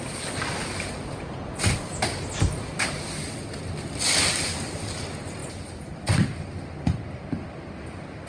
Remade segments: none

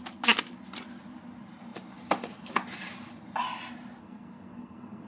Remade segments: 4.0-5.1

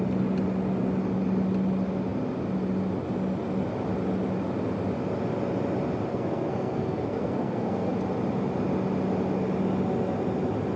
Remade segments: 6.1-7.9

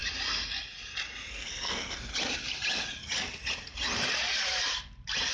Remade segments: 1.3-2.1